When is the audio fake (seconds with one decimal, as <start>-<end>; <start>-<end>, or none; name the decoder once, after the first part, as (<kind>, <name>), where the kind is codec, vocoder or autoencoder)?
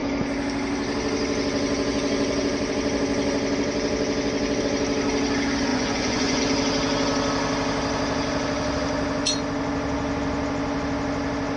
5.7-6.4 (vocoder, Vocos)